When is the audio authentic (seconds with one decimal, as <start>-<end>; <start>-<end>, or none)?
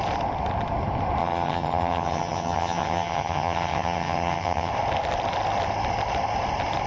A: 0.0-1.2; 4.7-6.9